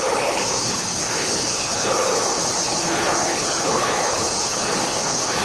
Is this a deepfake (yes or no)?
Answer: yes